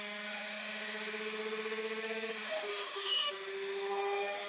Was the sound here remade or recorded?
remade